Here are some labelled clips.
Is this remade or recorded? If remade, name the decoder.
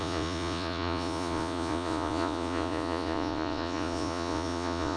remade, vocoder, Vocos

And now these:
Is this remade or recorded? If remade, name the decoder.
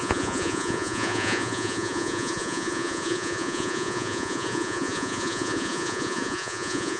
remade, vocoder, Vocos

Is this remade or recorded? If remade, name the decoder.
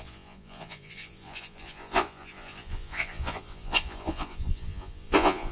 remade, vocoder, Vocos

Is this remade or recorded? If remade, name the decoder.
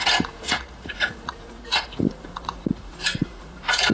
remade, vocoder, Vocos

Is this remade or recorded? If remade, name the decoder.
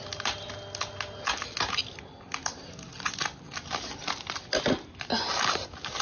recorded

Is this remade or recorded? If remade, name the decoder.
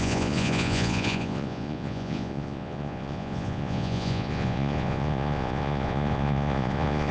remade, vocoder, Vocos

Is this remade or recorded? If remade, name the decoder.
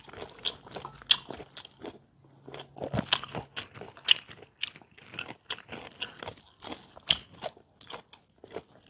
recorded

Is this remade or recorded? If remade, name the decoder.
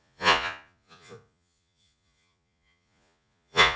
remade, vocoder, Vocos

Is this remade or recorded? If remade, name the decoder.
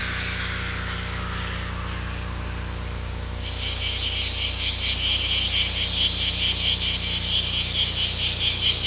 recorded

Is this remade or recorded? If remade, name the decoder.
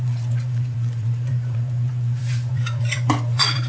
remade, vocoder, Vocos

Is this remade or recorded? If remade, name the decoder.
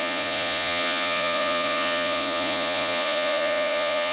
remade, vocoder, Vocos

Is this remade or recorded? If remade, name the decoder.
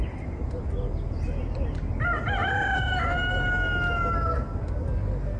recorded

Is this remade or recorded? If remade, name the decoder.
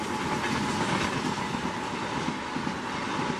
recorded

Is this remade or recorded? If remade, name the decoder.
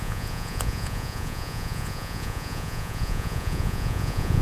remade, vocoder, Vocos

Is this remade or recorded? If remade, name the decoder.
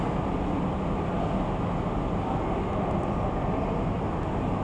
recorded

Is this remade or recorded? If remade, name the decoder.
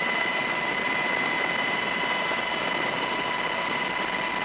recorded